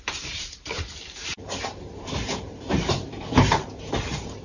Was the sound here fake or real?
fake